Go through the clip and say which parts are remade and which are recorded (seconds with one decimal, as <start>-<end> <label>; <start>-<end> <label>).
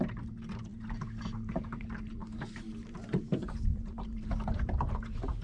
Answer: 0.0-5.4 remade